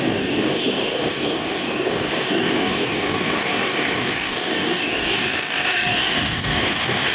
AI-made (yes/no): yes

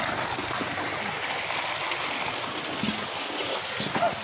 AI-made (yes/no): no